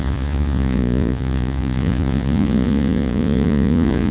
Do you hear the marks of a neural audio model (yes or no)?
yes